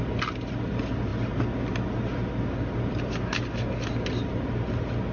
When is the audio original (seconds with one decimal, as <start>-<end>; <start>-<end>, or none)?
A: 0.0-5.1